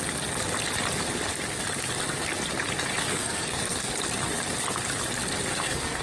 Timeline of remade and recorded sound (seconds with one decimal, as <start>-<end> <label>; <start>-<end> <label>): 0.0-3.1 recorded; 3.1-3.9 remade; 3.9-5.5 recorded; 5.5-6.0 remade